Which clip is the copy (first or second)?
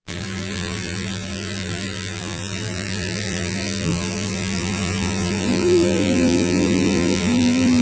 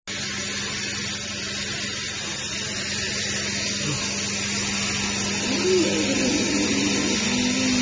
first